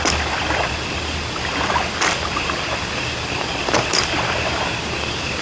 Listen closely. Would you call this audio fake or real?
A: real